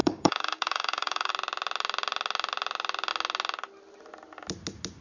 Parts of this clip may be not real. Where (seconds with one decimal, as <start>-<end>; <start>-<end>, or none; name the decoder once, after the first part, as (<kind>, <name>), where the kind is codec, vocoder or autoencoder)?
0.0-1.3 (codec, DAC)